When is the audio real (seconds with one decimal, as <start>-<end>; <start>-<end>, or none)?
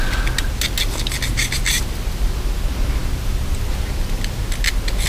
0.0-1.3; 2.4-3.0; 4.4-5.1